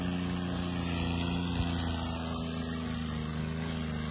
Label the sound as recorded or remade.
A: recorded